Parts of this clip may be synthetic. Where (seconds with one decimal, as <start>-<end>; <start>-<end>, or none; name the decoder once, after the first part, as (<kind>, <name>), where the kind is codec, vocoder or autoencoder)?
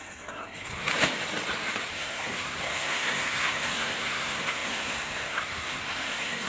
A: 0.0-0.9 (codec, SNAC); 1.9-6.5